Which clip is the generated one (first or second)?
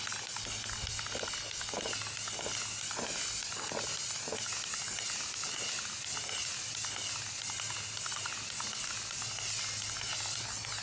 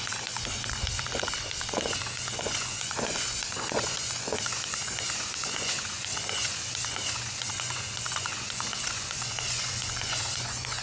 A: second